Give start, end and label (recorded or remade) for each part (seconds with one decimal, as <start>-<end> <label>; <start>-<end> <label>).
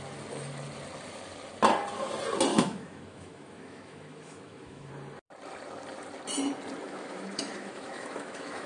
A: 0.0-2.5 recorded; 2.5-4.9 remade; 4.9-6.8 recorded; 6.8-8.7 remade